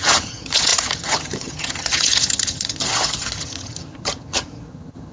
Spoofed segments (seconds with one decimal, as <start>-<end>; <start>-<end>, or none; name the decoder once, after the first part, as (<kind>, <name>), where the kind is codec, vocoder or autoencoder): 0.0-5.1 (vocoder, HiFi-GAN)